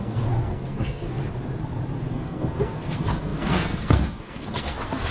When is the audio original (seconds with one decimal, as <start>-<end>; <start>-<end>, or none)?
1.2-2.1